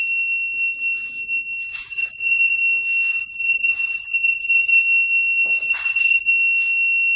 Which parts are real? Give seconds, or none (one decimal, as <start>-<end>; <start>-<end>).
0.0-1.7; 2.6-3.1; 4.8-5.6; 6.3-7.2